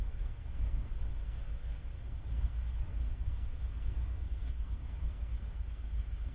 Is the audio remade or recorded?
remade